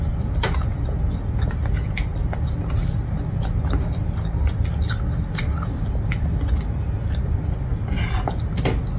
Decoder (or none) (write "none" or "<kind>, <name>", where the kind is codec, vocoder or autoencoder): none